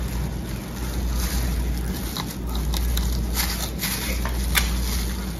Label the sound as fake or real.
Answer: real